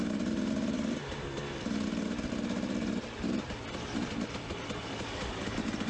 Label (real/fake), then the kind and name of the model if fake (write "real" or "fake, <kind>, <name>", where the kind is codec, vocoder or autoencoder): fake, vocoder, BigVGAN v2